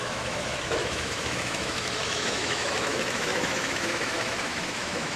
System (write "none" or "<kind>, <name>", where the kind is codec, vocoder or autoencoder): autoencoder, DAC-VAE